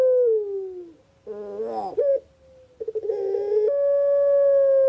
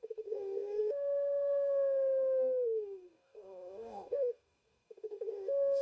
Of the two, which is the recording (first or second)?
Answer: first